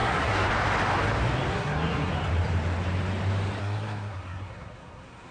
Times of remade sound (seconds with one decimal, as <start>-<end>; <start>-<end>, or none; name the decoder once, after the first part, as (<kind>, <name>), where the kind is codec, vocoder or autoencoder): 0.0-0.5 (codec, SNAC); 1.5-2.1; 3.6-5.3

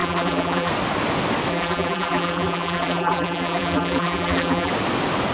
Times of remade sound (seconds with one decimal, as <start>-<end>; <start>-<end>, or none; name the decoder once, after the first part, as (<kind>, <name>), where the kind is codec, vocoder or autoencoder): 0.0-0.7 (vocoder, BigVGAN v2); 1.5-4.7